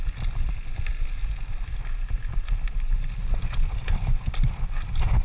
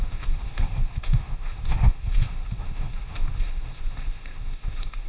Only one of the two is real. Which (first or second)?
first